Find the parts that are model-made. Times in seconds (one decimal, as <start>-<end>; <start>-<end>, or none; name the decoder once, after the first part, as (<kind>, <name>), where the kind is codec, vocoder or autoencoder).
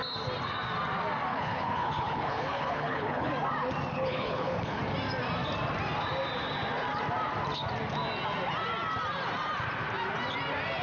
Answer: 1.3-3.3 (codec, HILCodec); 3.9-4.8